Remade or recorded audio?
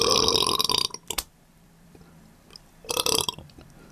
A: remade